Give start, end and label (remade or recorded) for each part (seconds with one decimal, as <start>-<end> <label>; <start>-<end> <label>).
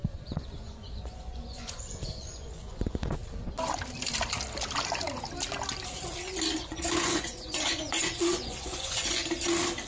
0.0-3.2 remade; 3.2-6.6 recorded; 6.6-9.2 remade; 9.2-9.9 recorded